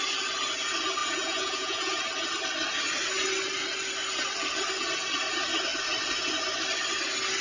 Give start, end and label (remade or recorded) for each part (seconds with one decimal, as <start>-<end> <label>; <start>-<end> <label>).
0.0-1.0 recorded; 1.0-2.0 remade; 2.0-7.4 recorded